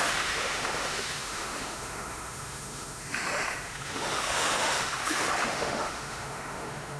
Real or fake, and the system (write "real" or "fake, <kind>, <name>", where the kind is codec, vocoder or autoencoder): fake, autoencoder, DAC-VAE